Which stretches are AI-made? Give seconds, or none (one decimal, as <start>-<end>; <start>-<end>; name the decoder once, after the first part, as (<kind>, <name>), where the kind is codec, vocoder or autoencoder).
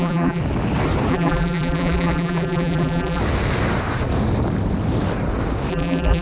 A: 0.0-0.4 (vocoder, BigVGAN v2); 1.1-3.2; 5.7-6.2